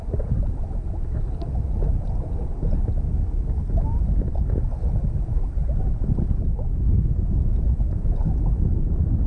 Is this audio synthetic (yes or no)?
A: no